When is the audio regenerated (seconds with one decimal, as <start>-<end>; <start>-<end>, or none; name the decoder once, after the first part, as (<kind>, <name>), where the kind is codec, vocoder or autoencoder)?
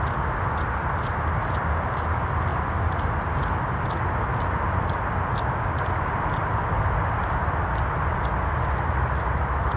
none